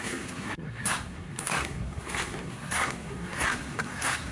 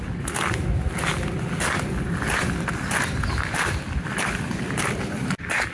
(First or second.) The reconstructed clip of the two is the first